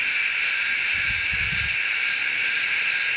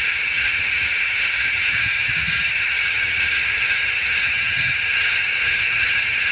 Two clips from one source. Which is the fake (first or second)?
second